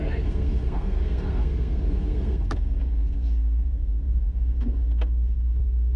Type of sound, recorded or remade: remade